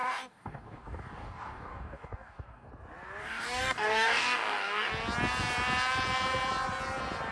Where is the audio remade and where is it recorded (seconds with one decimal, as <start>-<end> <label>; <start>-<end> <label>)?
0.0-2.7 remade; 2.7-3.2 recorded; 3.2-4.9 remade; 4.9-7.3 recorded